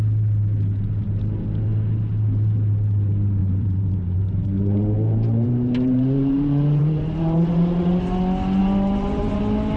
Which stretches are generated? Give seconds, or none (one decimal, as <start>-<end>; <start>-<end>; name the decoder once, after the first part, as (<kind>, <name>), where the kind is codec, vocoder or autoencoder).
3.4-7.2 (vocoder, BigVGAN v2); 8.6-9.4